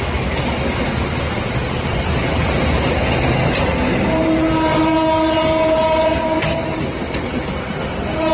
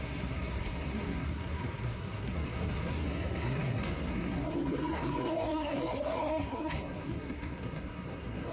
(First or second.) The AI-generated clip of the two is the second